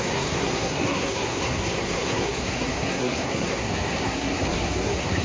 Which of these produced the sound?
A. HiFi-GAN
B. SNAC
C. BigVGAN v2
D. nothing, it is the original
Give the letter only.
B